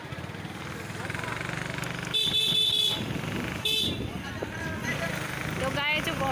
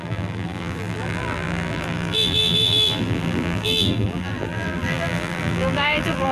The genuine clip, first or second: first